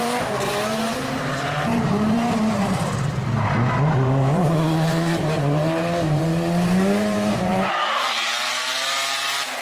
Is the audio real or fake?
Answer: fake